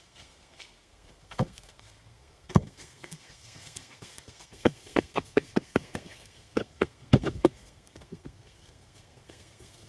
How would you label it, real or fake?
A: fake